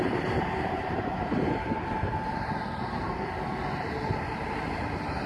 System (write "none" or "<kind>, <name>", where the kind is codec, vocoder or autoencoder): vocoder, BigVGAN v2